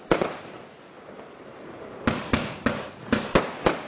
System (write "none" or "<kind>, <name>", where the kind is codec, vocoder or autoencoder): none